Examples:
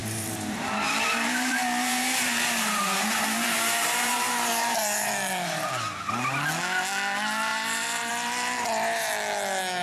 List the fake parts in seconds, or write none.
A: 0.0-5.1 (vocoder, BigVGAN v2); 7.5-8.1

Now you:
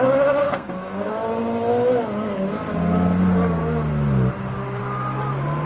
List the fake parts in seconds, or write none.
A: 0.4-1.1 (codec, SNAC)

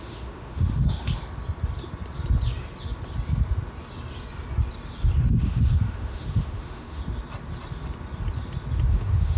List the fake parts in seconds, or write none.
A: 0.0-1.2 (autoencoder, DAC-VAE); 5.4-7.0; 8.9-9.4

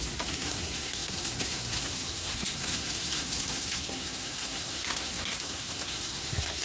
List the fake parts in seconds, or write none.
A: 0.0-6.6 (codec, SNAC)

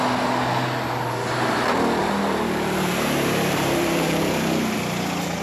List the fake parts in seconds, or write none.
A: 2.0-4.2 (vocoder, BigVGAN v2)

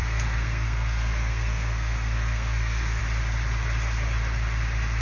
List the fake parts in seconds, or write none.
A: 0.0-3.0 (codec, SNAC)